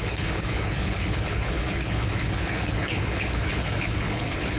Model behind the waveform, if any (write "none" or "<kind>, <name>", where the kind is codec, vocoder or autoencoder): codec, HILCodec